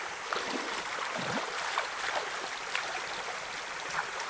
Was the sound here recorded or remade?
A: remade